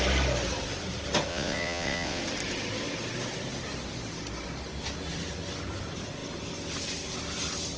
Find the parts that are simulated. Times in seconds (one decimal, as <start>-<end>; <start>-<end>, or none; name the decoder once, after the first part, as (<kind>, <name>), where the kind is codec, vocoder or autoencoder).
1.3-2.2 (vocoder, WaveNeXt)

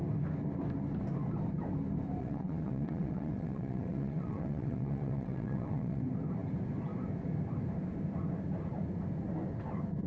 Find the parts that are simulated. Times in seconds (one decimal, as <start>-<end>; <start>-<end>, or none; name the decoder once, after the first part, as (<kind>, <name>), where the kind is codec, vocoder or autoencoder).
2.2-6.0 (vocoder, WaveNeXt)

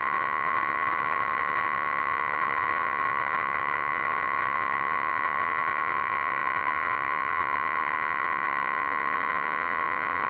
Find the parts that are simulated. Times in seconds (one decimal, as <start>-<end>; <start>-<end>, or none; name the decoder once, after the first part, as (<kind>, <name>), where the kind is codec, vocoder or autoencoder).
0.0-10.3 (vocoder, WaveNeXt)

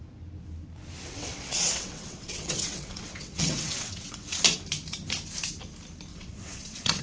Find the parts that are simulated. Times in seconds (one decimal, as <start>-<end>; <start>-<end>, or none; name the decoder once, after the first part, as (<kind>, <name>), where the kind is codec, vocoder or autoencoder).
1.0-4.4 (vocoder, WaveNeXt); 6.1-7.0

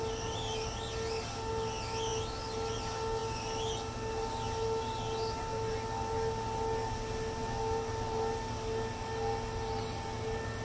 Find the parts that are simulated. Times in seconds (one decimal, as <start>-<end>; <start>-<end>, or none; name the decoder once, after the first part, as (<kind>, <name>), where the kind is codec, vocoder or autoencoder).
none

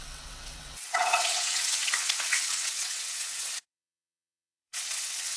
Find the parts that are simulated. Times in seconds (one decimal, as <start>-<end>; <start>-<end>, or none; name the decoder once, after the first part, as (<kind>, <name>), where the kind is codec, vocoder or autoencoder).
0.0-5.4 (vocoder, WaveNeXt)

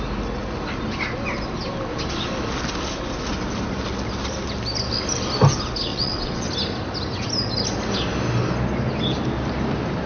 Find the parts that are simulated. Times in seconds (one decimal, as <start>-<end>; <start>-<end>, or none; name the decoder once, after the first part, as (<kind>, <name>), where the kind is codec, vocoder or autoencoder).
5.9-6.5 (vocoder, WaveNeXt)